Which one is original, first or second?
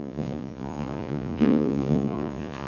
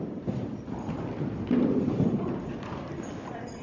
second